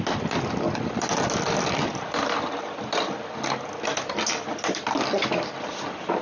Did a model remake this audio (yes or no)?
no